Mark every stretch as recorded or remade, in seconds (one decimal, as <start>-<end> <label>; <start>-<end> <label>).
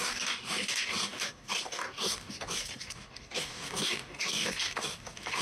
0.0-5.4 remade